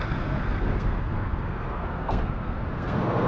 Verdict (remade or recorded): remade